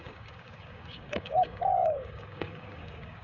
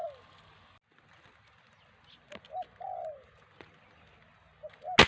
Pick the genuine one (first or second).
second